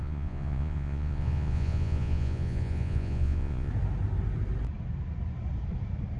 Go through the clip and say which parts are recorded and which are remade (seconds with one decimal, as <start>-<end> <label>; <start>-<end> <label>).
0.0-3.7 remade; 3.7-6.2 recorded